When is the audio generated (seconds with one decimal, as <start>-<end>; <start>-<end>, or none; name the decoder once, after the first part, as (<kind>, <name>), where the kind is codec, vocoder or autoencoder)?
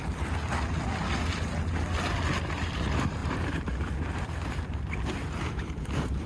3.2-6.3 (vocoder, BigVGAN v2)